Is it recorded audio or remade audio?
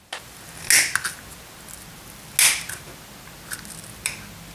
recorded